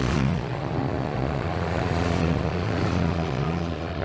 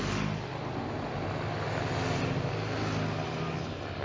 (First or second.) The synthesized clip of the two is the first